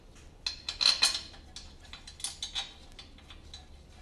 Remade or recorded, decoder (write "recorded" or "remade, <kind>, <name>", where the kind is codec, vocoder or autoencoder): recorded